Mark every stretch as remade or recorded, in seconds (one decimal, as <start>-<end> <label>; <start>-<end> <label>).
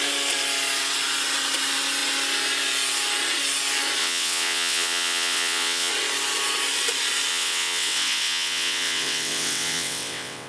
0.0-4.0 recorded; 4.0-5.9 remade; 5.9-7.3 recorded; 7.3-10.5 remade